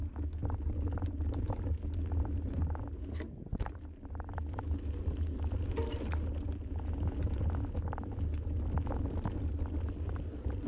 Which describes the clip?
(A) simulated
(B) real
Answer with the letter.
B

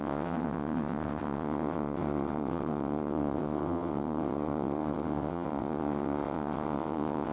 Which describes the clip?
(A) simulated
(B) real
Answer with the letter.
A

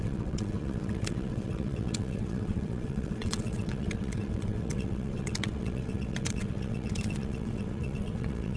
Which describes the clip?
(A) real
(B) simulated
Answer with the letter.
B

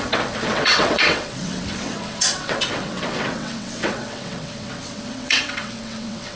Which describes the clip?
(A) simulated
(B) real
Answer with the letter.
A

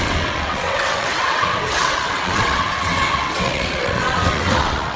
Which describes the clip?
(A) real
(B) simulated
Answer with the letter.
B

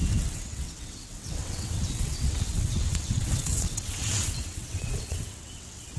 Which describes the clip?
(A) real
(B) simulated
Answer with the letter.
B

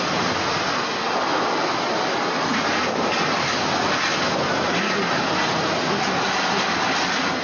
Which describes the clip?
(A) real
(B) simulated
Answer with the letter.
A